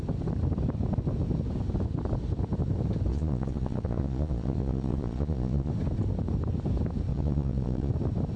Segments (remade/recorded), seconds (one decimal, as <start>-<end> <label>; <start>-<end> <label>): 0.0-3.1 recorded; 3.1-5.7 remade; 5.7-7.1 recorded; 7.1-7.9 remade; 7.9-8.4 recorded